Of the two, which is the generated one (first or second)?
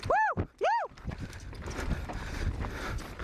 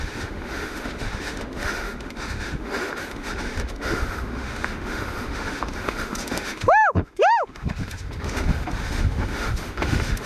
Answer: second